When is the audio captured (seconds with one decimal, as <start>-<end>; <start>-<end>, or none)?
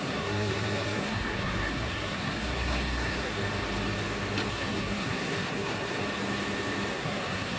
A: 3.4-4.5; 6.0-6.9